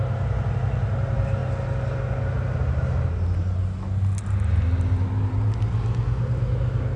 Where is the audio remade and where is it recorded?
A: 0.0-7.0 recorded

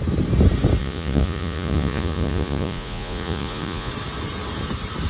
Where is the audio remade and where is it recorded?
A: 0.0-0.8 recorded; 0.8-3.9 remade; 3.9-5.1 recorded